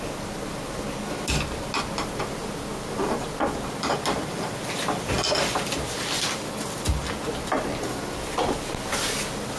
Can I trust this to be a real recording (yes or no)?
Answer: yes